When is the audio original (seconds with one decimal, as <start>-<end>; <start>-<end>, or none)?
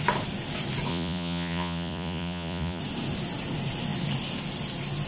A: 0.0-0.9; 2.8-5.1